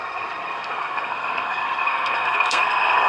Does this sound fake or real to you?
fake